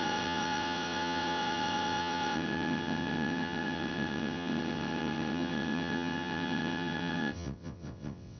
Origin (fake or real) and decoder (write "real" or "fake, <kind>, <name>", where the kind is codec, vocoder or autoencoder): fake, vocoder, WaveNeXt